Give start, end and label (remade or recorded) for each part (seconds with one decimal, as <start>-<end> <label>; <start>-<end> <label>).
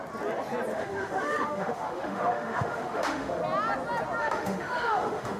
0.0-0.7 recorded; 0.7-3.4 remade; 3.4-4.2 recorded; 4.2-5.4 remade